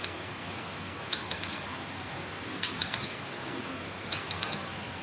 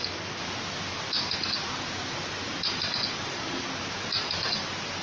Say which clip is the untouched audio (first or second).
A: second